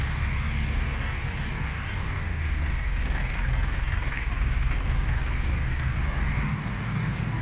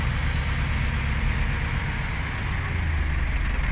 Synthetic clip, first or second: first